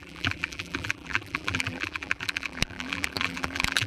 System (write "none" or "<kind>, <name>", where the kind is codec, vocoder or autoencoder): vocoder, BigVGAN v2